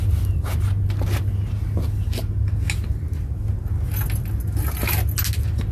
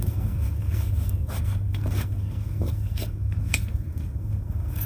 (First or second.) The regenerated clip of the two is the second